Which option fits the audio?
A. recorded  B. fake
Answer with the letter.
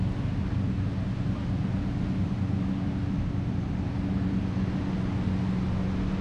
A